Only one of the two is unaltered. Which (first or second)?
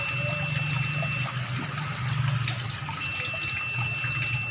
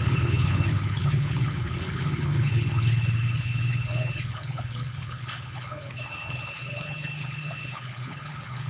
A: first